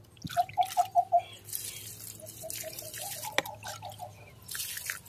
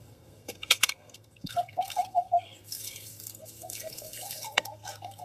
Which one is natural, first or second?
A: first